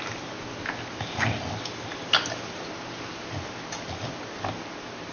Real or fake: real